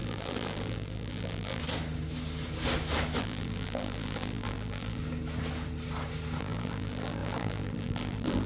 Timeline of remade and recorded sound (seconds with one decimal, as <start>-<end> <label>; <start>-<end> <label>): 0.0-1.6 remade; 1.6-3.2 recorded; 3.2-5.0 remade; 5.0-6.4 recorded; 6.4-8.5 remade